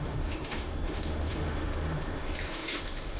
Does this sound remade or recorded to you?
remade